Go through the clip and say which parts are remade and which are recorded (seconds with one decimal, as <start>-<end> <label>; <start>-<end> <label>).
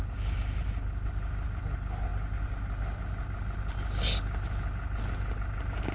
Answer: 0.0-5.9 recorded